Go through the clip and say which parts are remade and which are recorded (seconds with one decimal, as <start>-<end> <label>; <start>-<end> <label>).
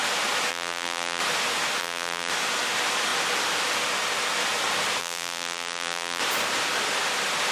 0.0-0.5 recorded; 0.5-1.2 remade; 1.2-1.8 recorded; 1.8-2.3 remade; 2.3-5.0 recorded; 5.0-6.2 remade; 6.2-7.5 recorded